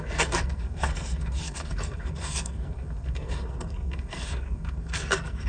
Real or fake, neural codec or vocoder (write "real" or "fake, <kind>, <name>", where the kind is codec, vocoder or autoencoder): fake, codec, SNAC